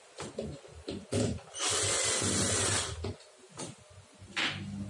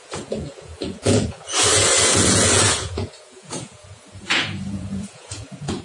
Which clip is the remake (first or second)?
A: second